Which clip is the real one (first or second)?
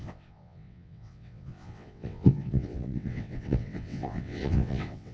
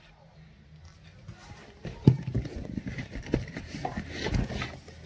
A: second